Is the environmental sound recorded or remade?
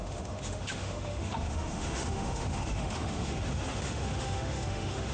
remade